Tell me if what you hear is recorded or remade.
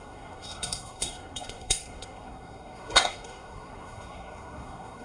remade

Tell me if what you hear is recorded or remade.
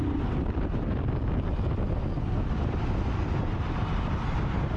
recorded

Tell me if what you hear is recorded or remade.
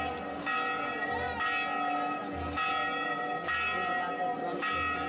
recorded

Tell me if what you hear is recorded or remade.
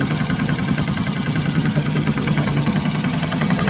remade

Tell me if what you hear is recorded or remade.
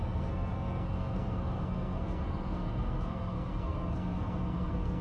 remade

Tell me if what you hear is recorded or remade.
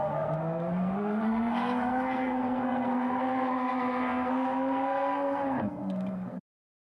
remade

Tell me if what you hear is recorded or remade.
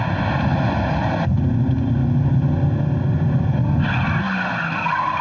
recorded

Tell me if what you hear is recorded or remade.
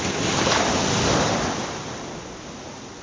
recorded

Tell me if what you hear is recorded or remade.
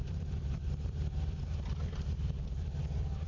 remade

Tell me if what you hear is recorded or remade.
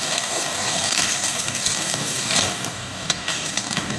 remade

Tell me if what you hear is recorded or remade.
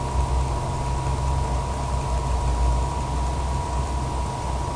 recorded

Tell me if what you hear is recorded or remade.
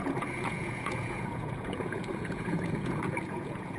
remade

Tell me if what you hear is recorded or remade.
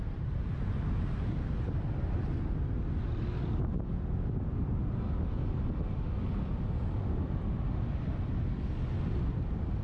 recorded